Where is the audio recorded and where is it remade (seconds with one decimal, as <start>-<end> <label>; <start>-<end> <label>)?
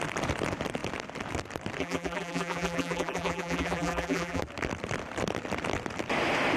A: 0.0-1.8 recorded; 1.8-4.4 remade; 4.4-6.6 recorded